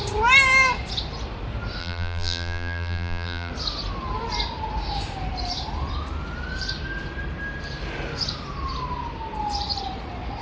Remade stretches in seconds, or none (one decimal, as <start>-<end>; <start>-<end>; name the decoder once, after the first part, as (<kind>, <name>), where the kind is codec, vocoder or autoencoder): 1.8-3.5 (vocoder, BigVGAN v2)